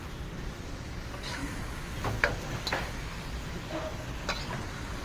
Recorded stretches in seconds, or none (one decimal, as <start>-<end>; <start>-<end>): 0.0-5.0